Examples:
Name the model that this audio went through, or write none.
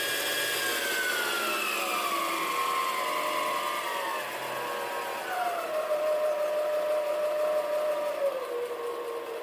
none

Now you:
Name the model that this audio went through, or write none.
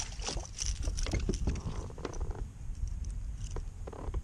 vocoder, BigVGAN v2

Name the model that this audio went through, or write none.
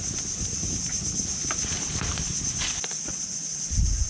none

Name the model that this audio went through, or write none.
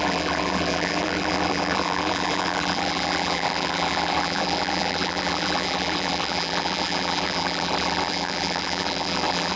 vocoder, BigVGAN v2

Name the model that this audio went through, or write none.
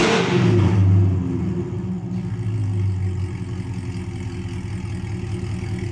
none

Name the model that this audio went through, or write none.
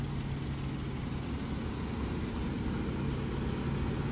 none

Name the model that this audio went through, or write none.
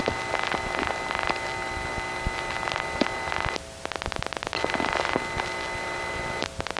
none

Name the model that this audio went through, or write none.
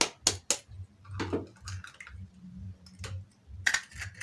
none